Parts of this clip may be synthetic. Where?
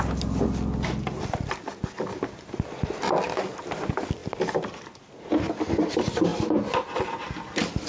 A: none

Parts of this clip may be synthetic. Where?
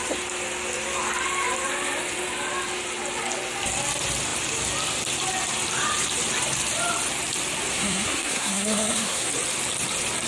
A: 7.7-9.3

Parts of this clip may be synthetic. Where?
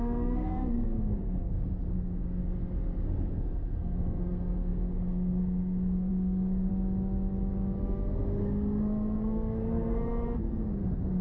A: 0.0-2.4; 3.0-6.7; 7.8-11.2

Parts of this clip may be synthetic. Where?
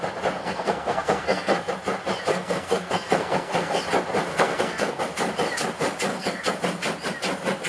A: 0.4-1.7; 2.3-3.8; 4.3-5.0; 6.1-6.6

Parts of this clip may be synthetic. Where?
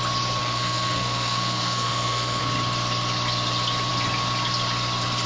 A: 0.4-2.4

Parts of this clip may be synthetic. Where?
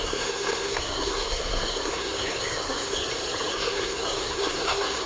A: 0.0-3.0; 3.5-5.1